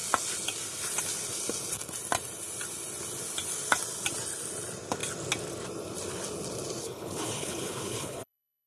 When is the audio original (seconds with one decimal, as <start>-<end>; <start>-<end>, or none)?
0.0-6.8

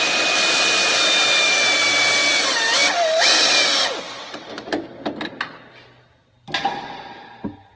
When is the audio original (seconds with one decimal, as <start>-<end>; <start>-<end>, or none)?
0.0-7.8

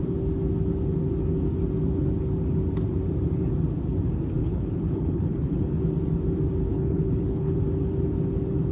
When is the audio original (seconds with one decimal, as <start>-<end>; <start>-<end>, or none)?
0.0-4.4; 5.8-6.7; 7.6-8.7

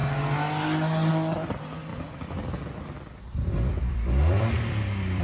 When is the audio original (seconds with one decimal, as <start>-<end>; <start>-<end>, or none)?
0.0-1.9

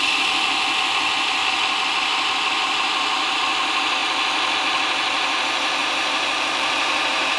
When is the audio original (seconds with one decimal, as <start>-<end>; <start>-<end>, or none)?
0.0-5.8